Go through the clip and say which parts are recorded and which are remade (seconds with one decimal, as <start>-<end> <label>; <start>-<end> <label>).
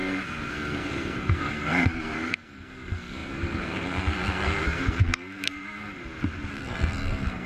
0.0-6.0 remade; 6.0-6.5 recorded; 6.5-7.5 remade